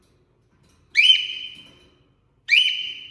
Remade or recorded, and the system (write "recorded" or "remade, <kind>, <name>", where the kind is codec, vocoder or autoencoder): recorded